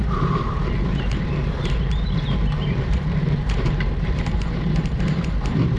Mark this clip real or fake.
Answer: fake